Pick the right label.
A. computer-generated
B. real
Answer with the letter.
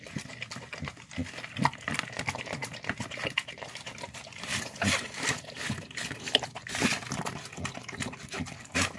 B